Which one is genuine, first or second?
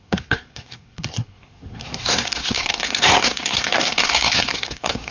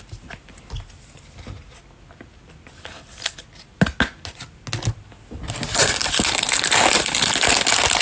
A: second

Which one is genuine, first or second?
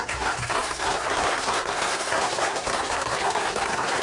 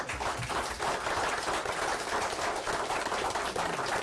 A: second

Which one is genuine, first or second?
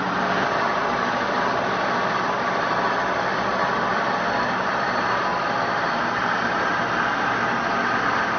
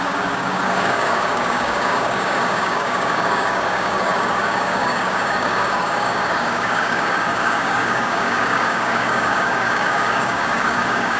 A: first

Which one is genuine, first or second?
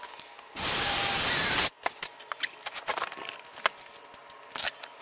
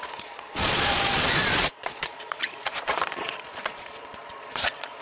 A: first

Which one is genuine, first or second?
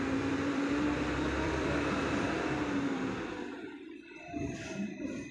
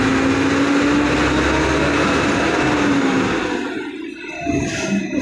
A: second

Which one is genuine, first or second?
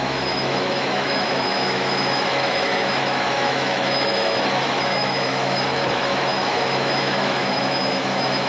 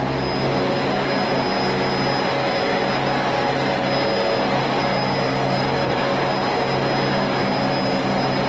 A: second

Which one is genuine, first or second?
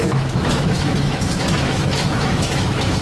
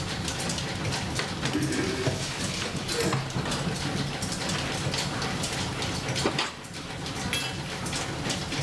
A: second